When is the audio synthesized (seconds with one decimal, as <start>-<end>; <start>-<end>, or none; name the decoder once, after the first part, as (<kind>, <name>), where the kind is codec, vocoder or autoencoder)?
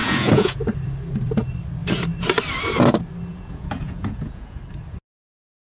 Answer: 0.0-0.6 (vocoder, Vocos); 3.3-4.6